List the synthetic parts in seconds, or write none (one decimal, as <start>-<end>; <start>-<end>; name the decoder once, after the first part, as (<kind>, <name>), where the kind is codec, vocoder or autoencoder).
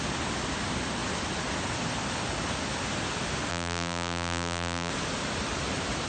3.5-4.9 (vocoder, BigVGAN v2)